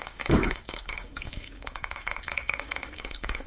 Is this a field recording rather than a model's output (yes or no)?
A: no